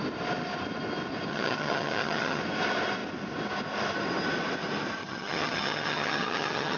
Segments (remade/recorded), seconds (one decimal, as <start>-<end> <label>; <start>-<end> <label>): 0.0-1.3 recorded; 1.3-2.4 remade; 2.4-5.0 recorded; 5.0-6.8 remade